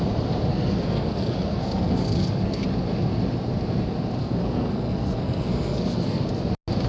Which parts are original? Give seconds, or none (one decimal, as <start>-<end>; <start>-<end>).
0.0-0.5; 2.6-4.2; 6.2-6.9